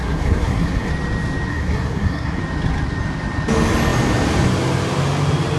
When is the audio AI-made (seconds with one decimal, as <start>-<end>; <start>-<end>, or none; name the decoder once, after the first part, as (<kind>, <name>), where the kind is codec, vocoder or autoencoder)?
0.0-0.9 (codec, SNAC); 1.5-2.4